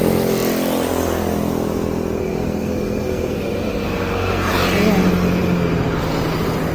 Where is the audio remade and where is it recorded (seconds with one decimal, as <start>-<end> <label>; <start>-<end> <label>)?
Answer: 0.0-2.2 recorded; 2.2-4.5 remade; 4.5-6.7 recorded

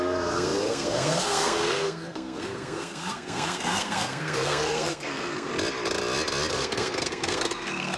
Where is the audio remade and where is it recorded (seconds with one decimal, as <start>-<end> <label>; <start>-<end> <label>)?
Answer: 0.0-5.5 remade; 5.5-6.5 recorded; 6.5-8.0 remade

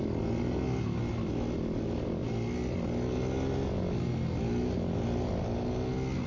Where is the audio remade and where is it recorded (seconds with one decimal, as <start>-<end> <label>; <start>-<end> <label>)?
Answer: 0.0-6.3 recorded

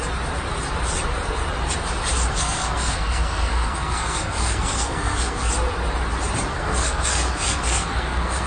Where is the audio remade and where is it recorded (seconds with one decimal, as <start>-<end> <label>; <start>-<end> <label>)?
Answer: 0.0-2.3 recorded; 2.3-5.5 remade; 5.5-6.5 recorded; 6.5-8.5 remade

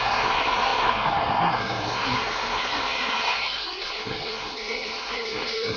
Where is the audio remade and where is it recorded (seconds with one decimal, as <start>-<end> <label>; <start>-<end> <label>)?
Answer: 0.0-5.8 remade

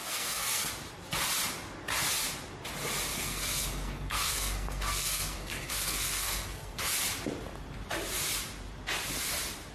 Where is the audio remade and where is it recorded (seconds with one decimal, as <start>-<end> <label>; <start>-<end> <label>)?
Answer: 0.0-0.7 remade; 0.7-3.1 recorded; 3.1-6.8 remade; 6.8-9.7 recorded